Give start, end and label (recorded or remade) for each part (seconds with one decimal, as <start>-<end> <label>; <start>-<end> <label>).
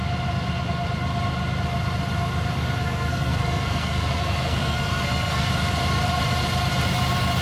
0.0-2.8 recorded; 2.8-5.5 remade; 5.5-7.4 recorded